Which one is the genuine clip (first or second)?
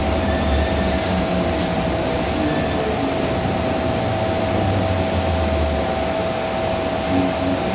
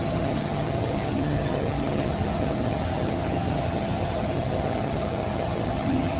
first